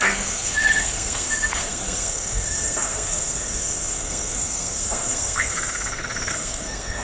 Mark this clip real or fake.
fake